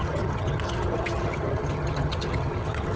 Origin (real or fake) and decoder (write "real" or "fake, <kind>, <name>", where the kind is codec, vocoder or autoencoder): fake, vocoder, HiFi-GAN